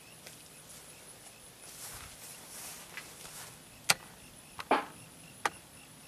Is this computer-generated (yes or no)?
no